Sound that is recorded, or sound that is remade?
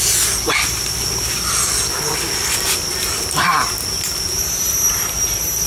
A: recorded